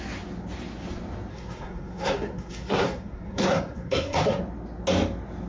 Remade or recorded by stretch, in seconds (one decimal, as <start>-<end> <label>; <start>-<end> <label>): 0.0-1.3 recorded; 1.3-4.4 remade; 4.4-5.5 recorded